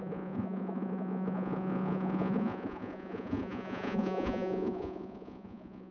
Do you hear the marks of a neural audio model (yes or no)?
yes